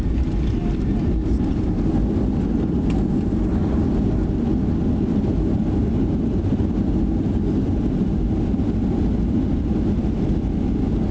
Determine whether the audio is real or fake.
real